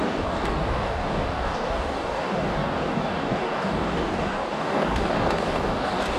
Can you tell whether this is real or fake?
fake